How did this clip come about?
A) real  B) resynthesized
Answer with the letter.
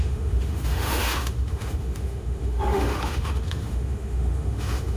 B